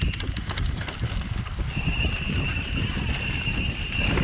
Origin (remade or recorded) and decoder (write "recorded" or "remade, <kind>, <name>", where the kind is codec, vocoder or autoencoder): recorded